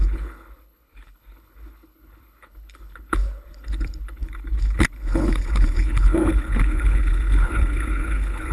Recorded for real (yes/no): no